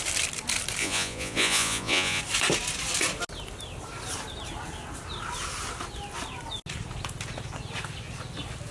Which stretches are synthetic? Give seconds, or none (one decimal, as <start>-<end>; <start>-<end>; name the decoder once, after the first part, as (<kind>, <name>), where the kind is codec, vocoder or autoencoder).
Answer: 0.8-2.2 (vocoder, Vocos)

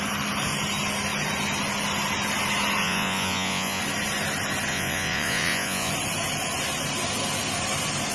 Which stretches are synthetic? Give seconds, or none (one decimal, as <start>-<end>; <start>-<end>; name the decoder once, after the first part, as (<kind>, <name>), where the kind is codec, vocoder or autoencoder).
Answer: 2.8-3.8 (vocoder, Vocos); 4.7-5.9

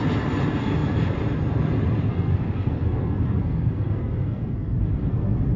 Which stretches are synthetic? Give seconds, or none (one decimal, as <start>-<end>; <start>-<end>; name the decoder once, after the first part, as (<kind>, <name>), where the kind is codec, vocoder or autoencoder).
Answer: 2.1-5.6 (codec, SNAC)

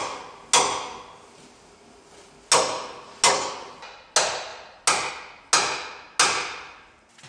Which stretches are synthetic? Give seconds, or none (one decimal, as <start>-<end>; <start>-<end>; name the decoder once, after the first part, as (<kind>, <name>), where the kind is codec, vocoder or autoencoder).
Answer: none

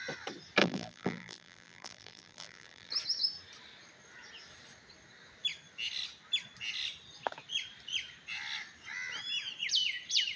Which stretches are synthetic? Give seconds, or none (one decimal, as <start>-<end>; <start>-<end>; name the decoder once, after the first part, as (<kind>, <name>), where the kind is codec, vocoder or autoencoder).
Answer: 0.6-2.9 (vocoder, BigVGAN v2)